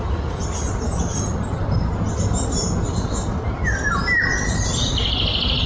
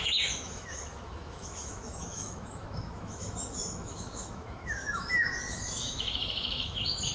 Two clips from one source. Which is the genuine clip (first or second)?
first